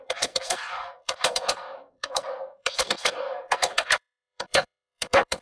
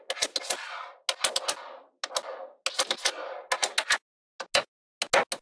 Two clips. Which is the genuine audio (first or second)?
second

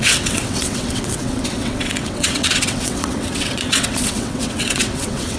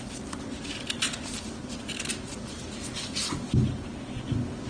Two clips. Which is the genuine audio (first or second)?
second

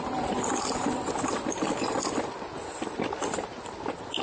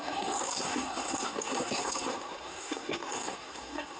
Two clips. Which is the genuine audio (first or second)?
first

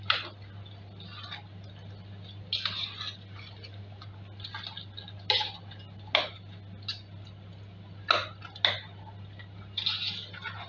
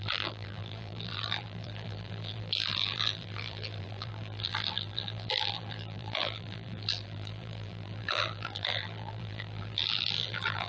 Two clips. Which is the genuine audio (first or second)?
first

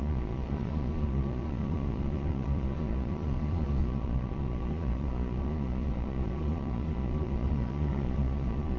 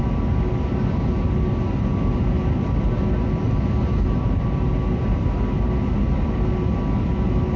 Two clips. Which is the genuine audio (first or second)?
second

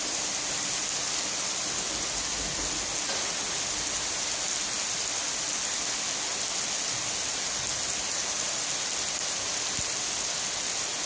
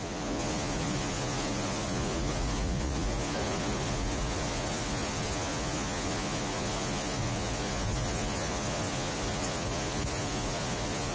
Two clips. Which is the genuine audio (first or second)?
first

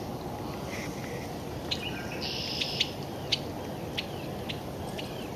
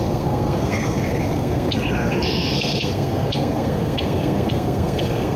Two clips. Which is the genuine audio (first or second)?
first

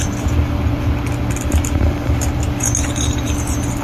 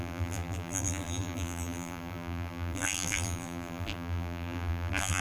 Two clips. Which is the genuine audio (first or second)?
first